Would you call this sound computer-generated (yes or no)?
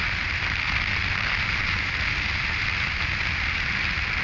no